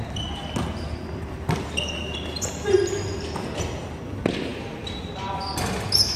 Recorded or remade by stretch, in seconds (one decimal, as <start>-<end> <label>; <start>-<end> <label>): 0.0-6.2 recorded